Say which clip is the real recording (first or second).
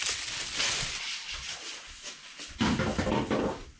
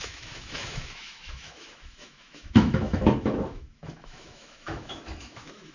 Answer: first